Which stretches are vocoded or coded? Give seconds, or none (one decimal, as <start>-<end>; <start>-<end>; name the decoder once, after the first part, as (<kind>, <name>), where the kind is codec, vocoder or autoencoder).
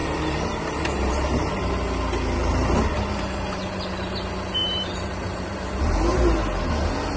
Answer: 0.0-1.7 (vocoder, BigVGAN v2); 2.4-4.1; 4.6-5.6